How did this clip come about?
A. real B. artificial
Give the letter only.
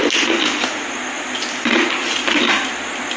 A